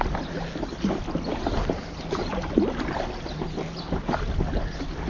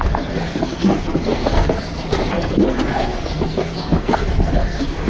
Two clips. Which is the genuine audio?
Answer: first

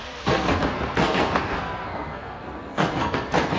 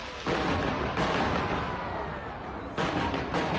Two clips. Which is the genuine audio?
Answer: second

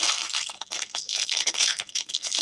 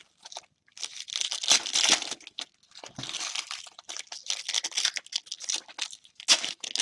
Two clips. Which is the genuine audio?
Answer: second